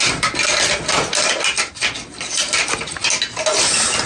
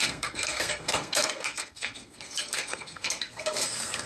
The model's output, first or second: second